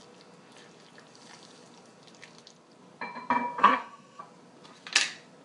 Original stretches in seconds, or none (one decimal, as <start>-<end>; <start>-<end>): 0.0-3.6; 4.2-5.4

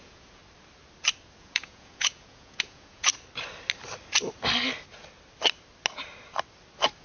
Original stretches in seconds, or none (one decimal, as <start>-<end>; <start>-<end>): 0.4-1.4; 3.1-7.0

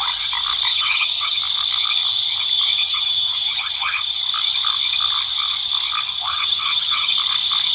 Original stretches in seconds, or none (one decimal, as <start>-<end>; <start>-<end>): 0.0-0.7; 1.4-2.8; 4.2-6.3; 7.1-7.7

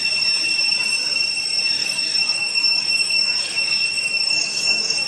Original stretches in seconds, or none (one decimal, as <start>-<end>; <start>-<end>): 0.0-1.8

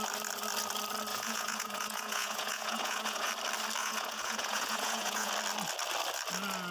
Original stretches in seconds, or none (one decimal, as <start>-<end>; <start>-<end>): 0.0-1.1; 3.3-3.8; 5.3-6.7

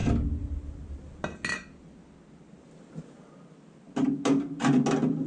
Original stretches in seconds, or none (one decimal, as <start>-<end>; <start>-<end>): 0.0-5.3

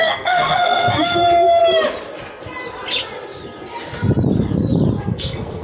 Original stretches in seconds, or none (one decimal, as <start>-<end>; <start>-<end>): 1.6-5.0